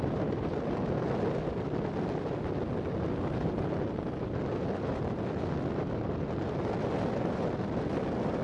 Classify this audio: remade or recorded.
recorded